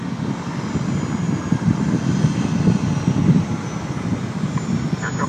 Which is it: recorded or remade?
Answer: recorded